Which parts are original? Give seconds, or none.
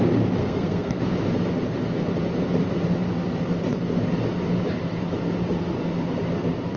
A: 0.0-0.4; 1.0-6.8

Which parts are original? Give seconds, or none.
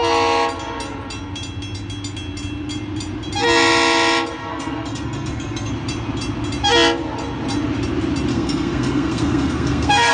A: 0.0-4.4; 5.7-8.3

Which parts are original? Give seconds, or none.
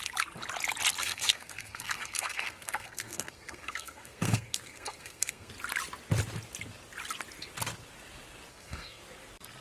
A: 0.0-1.0; 5.5-8.5; 9.0-9.6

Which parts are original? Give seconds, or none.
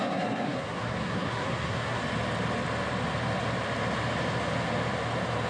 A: 2.0-5.5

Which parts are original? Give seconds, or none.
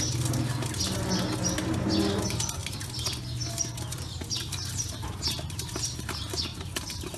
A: 0.0-7.2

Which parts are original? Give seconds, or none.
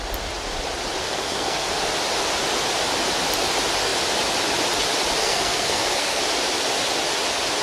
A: 0.0-1.0; 1.7-5.2; 6.2-7.6